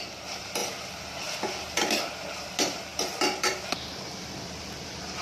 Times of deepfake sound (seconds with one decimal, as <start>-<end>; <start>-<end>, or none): 2.9-3.5